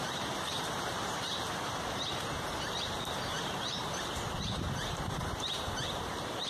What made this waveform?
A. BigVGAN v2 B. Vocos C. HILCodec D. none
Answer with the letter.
A